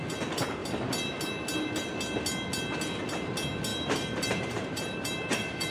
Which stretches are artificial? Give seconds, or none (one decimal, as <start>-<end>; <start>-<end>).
3.7-5.7

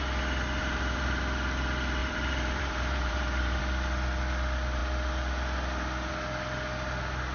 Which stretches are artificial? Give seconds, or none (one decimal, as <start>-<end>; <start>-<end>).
0.6-1.2; 2.0-3.6

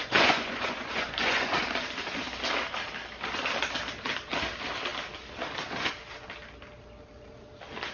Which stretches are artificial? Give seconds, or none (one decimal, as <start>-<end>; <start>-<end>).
0.0-1.6

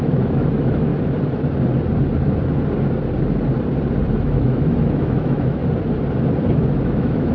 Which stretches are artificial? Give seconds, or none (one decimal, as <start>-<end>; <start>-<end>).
0.0-0.9; 4.2-5.6; 6.8-7.3

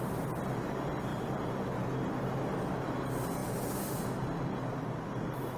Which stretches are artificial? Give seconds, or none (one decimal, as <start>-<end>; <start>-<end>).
none